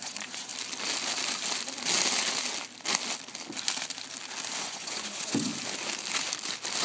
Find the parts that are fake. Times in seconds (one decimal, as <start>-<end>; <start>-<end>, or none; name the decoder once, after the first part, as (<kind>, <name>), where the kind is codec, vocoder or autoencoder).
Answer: 0.0-0.5 (vocoder, Vocos); 4.6-5.5